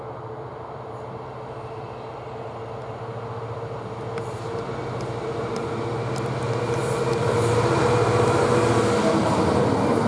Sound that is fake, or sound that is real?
real